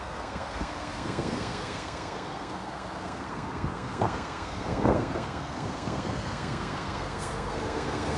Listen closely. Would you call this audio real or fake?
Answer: fake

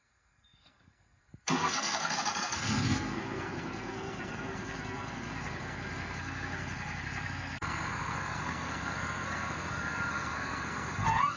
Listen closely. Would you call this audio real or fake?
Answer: fake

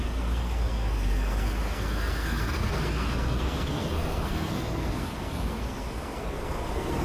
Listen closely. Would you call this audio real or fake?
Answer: fake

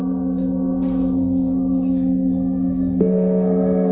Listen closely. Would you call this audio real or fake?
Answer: fake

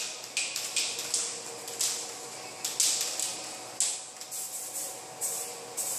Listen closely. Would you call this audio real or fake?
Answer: real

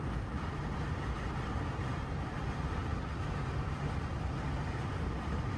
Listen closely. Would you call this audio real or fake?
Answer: real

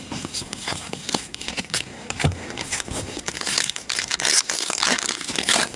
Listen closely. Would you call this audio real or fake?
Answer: fake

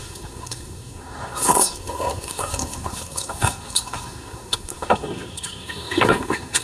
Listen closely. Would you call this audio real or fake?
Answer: fake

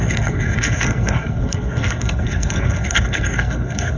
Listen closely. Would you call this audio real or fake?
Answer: fake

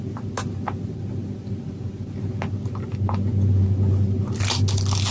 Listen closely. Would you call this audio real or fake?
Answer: real